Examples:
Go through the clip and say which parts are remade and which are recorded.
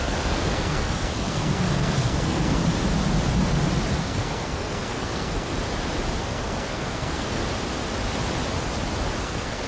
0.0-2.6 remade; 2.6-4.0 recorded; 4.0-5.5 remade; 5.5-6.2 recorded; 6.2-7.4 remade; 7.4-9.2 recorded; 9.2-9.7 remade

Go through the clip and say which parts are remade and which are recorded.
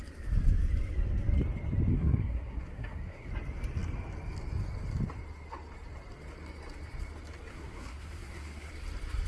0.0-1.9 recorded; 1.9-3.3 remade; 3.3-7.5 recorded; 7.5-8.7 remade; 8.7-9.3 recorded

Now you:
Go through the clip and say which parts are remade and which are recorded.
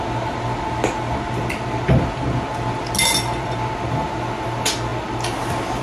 0.0-5.8 recorded